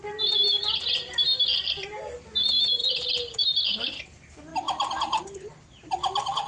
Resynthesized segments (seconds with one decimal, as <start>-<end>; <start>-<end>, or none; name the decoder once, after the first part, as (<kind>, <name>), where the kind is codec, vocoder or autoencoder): none